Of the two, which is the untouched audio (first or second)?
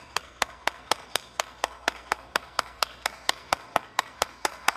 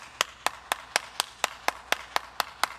second